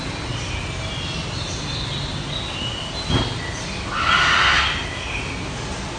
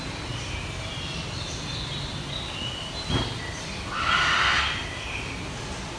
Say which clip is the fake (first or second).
second